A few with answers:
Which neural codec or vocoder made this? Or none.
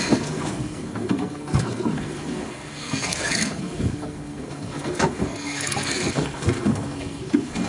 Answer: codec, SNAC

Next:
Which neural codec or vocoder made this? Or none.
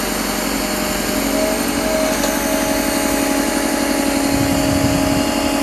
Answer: none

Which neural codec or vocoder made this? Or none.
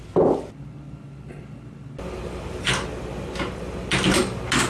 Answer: none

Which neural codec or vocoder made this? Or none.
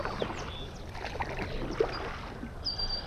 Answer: none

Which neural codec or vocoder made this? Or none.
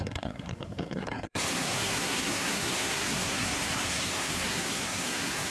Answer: codec, SNAC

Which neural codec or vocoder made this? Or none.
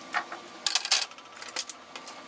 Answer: none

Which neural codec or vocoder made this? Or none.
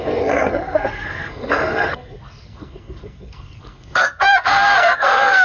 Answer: codec, SNAC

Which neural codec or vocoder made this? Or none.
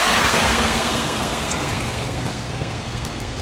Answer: codec, SNAC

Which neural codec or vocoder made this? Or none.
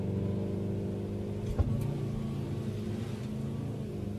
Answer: none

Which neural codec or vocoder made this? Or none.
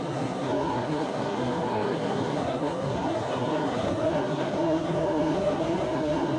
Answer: codec, SNAC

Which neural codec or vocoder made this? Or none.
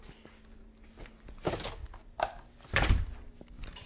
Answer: none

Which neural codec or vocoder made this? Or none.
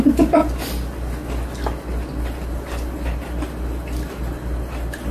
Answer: none